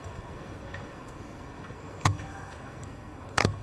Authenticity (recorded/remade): remade